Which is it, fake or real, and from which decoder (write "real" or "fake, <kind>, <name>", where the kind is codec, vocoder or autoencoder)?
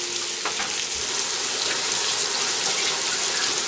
real